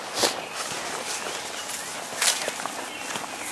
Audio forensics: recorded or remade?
recorded